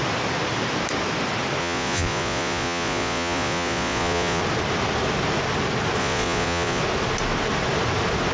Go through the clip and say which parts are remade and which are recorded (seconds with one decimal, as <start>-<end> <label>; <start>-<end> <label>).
0.0-1.6 recorded; 1.6-4.4 remade; 4.4-6.0 recorded; 6.0-6.8 remade; 6.8-8.3 recorded